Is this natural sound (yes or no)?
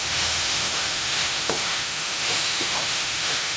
no